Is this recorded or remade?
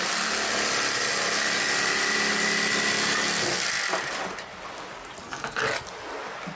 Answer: recorded